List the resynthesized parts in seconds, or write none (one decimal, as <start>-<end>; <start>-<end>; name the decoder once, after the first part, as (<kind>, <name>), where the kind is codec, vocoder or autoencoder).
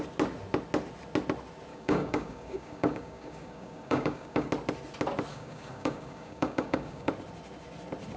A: 1.7-4.5 (codec, DAC); 5.3-7.1